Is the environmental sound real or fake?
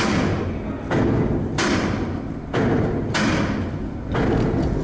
real